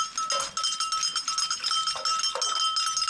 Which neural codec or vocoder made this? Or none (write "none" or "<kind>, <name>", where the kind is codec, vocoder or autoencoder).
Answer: none